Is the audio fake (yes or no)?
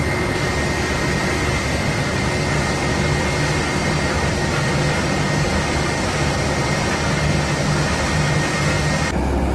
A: no